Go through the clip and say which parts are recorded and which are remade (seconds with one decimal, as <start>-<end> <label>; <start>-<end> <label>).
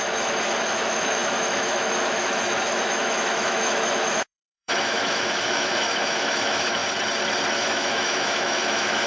0.0-6.8 remade; 6.8-7.5 recorded; 7.5-9.1 remade